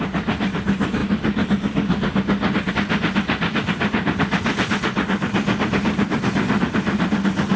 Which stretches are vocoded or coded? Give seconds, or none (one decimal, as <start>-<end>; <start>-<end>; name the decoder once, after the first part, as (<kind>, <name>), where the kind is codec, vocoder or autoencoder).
none